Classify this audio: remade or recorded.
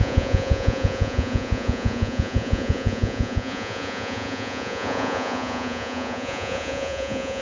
remade